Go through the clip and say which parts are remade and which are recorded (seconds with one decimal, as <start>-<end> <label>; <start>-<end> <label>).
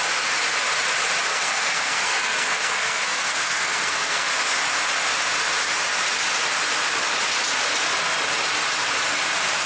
0.0-1.3 recorded; 1.3-4.3 remade; 4.3-9.7 recorded